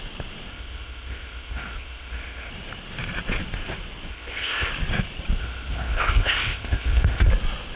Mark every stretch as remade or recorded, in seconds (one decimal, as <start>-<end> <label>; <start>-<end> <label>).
0.0-0.5 recorded; 0.5-2.5 remade; 2.5-4.1 recorded; 4.1-4.7 remade; 4.7-5.4 recorded; 5.4-7.3 remade; 7.3-7.8 recorded